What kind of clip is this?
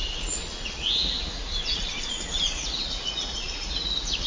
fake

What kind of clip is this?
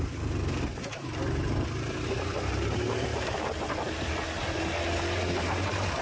real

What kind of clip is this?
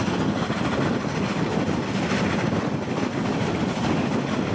real